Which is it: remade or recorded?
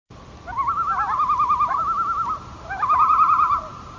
recorded